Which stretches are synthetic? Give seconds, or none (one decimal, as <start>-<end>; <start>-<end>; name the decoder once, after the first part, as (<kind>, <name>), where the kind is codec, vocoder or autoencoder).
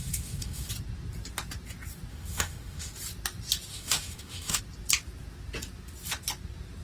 0.0-0.7 (autoencoder, DAC-VAE); 2.1-2.9; 3.7-4.6